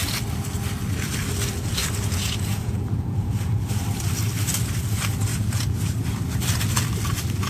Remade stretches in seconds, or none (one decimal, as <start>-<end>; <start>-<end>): 1.8-3.7; 5.3-6.0